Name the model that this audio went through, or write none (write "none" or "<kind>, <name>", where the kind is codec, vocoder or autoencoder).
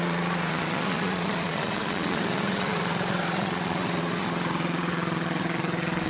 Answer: vocoder, Vocos